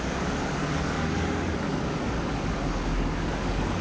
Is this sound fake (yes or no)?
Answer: yes